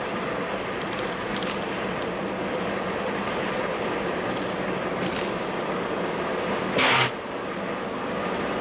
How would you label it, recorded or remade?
recorded